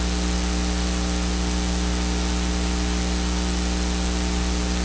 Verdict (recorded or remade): recorded